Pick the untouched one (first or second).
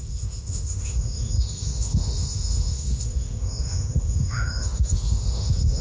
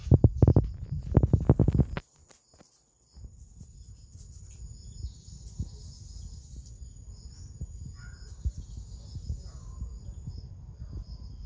second